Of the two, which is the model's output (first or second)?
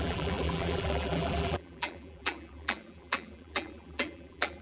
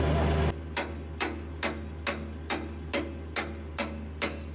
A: first